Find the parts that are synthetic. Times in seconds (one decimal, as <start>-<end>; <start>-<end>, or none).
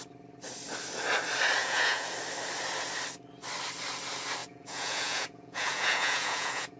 1.6-2.1; 4.4-6.8